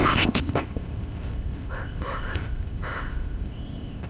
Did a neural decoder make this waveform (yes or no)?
yes